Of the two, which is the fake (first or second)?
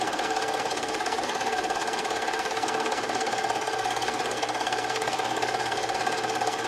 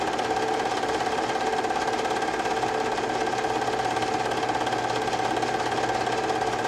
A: first